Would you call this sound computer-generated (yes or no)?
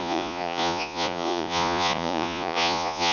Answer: yes